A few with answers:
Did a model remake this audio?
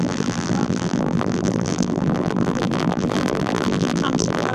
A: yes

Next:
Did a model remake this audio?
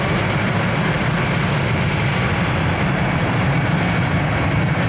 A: no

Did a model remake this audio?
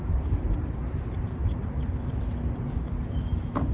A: no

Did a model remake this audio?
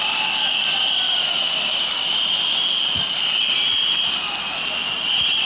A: no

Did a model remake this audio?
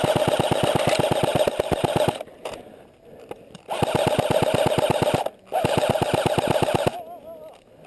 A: no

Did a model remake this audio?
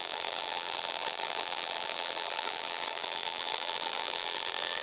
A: yes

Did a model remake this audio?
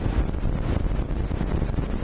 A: no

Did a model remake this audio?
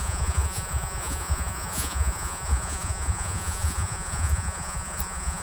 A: yes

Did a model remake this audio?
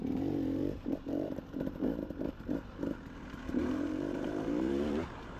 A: yes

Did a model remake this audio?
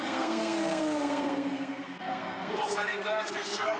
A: yes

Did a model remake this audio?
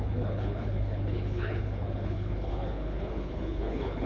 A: yes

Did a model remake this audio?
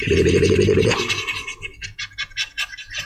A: no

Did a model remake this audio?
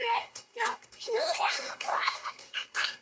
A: yes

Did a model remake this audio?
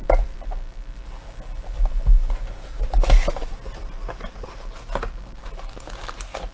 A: no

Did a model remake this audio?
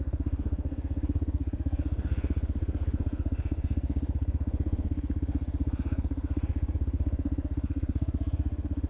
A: yes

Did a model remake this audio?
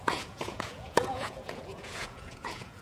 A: yes